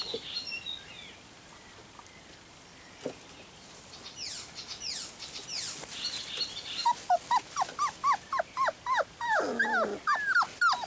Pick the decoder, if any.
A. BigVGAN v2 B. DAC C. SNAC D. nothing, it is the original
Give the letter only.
D